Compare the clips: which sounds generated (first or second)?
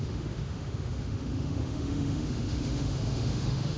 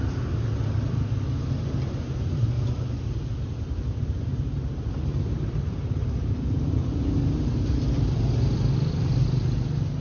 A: first